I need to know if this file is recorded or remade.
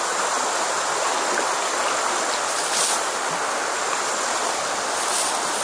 recorded